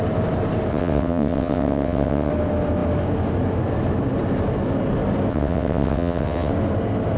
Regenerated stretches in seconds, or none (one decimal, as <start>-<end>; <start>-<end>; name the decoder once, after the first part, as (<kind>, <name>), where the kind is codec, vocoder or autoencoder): 0.7-2.3 (vocoder, WaveNeXt); 5.3-6.5